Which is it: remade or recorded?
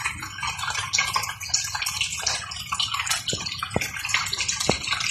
recorded